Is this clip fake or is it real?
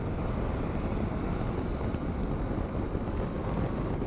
real